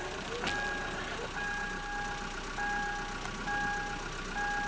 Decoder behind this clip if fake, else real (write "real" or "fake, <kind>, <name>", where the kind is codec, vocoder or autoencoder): real